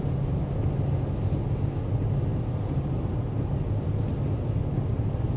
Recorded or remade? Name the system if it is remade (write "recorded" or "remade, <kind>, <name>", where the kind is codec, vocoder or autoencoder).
recorded